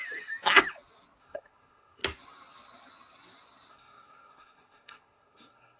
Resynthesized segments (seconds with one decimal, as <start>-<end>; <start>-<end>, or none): 1.2-2.0; 3.7-5.8